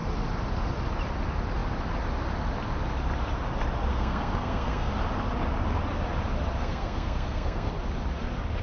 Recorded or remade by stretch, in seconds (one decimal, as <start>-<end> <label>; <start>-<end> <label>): 0.0-3.9 recorded; 3.9-4.9 remade; 4.9-6.6 recorded; 6.6-7.7 remade; 7.7-8.6 recorded